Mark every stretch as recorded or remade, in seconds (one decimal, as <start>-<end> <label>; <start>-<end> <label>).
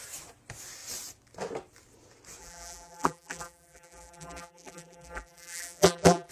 0.0-2.4 recorded; 2.4-6.3 remade